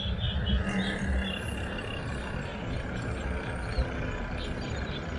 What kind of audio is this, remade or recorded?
recorded